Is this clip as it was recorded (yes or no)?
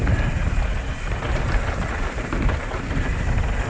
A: yes